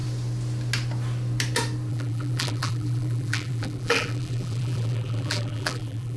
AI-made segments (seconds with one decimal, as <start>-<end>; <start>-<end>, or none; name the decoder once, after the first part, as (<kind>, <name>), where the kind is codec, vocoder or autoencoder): 1.9-6.2 (vocoder, BigVGAN v2)